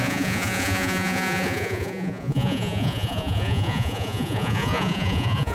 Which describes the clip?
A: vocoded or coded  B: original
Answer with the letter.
A